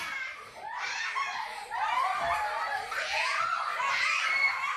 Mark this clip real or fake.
real